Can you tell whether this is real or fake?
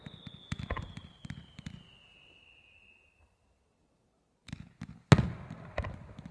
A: real